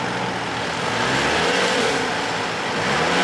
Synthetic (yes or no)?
no